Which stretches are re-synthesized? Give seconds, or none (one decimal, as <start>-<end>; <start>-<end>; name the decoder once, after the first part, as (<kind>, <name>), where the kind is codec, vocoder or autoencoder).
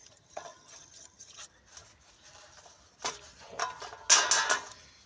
0.0-1.4 (vocoder, HiFi-GAN)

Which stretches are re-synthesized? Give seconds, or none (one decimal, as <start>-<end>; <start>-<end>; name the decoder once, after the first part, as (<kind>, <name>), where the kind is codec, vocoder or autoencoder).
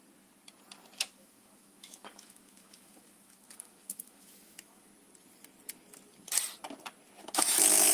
1.1-4.9 (autoencoder, DAC-VAE); 7.2-7.9